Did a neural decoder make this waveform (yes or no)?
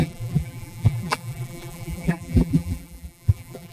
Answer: yes